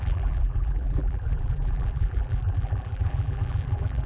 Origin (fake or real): fake